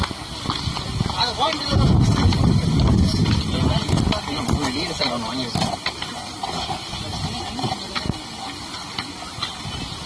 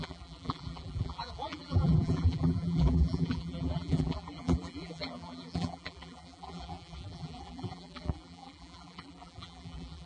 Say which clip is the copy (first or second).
second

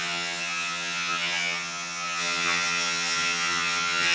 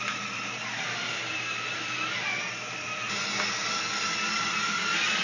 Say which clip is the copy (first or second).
first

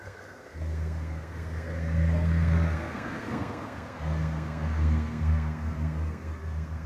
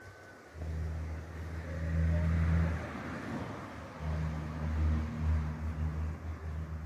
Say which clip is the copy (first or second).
first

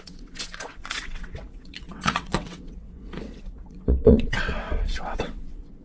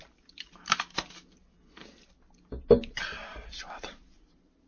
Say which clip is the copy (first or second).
first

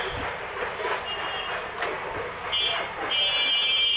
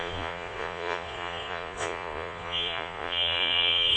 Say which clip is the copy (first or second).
second